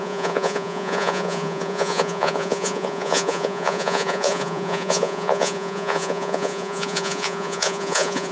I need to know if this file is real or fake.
fake